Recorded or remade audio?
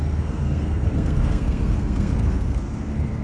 remade